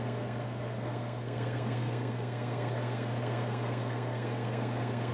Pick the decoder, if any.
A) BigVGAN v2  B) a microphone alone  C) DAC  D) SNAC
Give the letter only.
D